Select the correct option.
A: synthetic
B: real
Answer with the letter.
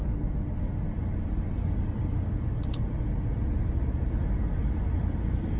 B